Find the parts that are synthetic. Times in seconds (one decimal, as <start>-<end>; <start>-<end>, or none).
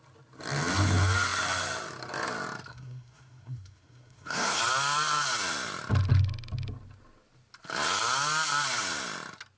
2.7-4.6